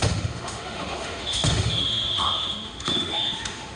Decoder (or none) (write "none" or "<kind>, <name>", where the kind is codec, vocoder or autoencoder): autoencoder, DAC-VAE